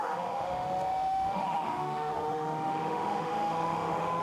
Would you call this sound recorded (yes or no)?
no